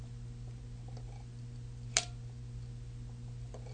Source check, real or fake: real